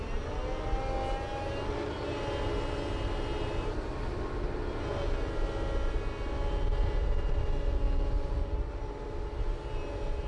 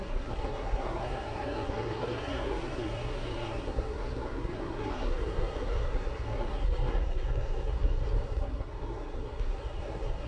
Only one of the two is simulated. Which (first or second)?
second